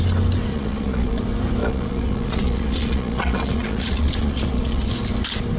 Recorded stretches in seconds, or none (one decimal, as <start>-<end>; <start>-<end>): 0.0-0.5; 1.2-1.6; 4.9-5.6